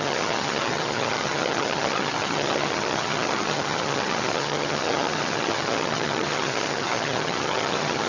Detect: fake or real fake